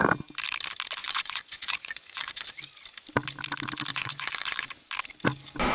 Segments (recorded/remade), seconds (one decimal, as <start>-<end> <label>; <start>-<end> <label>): 0.0-1.0 recorded; 1.0-2.4 remade; 2.4-3.9 recorded; 3.9-4.7 remade; 4.7-5.7 recorded